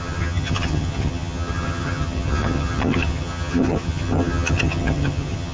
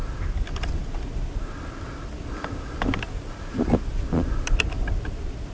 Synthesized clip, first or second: first